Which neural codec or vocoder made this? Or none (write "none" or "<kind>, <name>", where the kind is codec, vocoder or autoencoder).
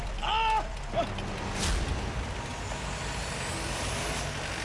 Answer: none